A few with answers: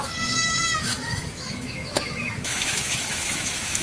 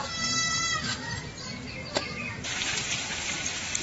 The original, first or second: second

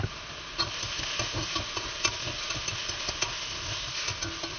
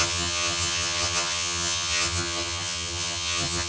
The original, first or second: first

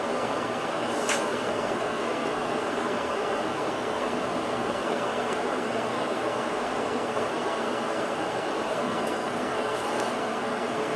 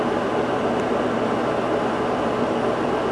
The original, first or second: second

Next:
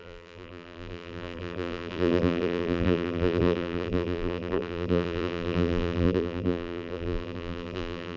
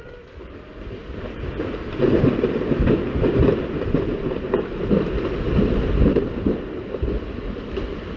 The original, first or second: second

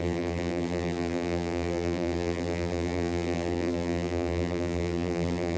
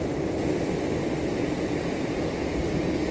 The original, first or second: second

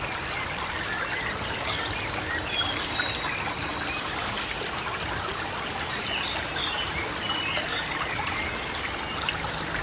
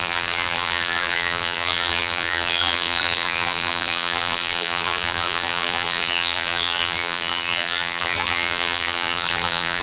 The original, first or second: first